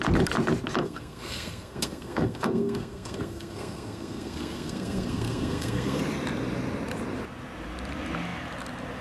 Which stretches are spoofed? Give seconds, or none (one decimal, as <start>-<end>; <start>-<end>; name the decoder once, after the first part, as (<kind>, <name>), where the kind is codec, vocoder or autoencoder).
0.8-6.0 (codec, SNAC)